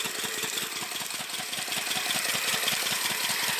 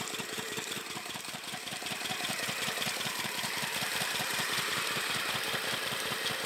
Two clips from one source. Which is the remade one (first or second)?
second